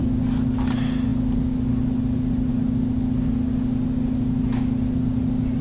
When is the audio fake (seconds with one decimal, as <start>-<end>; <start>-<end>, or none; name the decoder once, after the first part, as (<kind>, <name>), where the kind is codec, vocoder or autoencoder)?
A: none